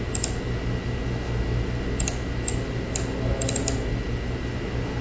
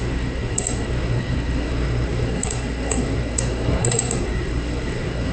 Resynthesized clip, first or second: second